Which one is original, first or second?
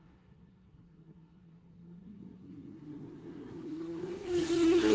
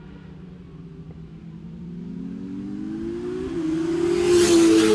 second